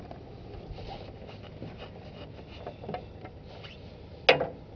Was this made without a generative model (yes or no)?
yes